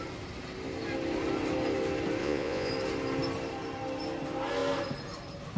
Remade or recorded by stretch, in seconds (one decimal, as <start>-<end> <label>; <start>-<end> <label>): 0.0-2.2 recorded; 2.2-2.7 remade; 2.7-5.6 recorded